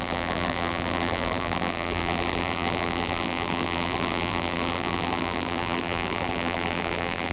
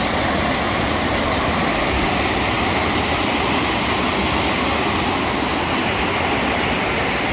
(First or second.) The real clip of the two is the second